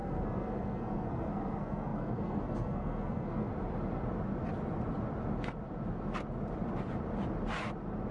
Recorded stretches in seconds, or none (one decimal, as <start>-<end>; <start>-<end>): 3.5-8.1